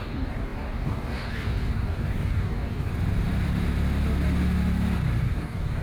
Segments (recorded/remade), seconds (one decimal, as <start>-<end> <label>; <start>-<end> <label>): 0.0-2.9 remade; 2.9-5.2 recorded; 5.2-5.8 remade